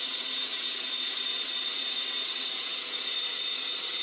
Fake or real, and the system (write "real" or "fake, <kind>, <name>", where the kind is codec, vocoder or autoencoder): fake, vocoder, WaveNeXt